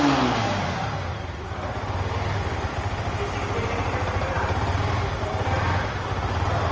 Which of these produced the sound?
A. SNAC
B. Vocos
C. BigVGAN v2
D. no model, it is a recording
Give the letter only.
D